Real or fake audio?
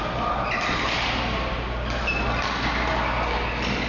real